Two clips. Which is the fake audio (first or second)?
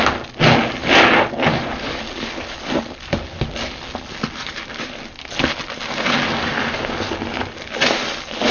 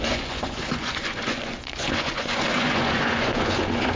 second